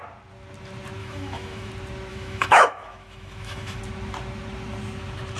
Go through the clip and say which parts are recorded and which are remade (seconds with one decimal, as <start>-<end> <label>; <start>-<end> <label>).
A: 0.0-1.0 recorded; 1.0-1.7 remade; 1.7-2.1 recorded; 2.1-3.8 remade; 3.8-5.4 recorded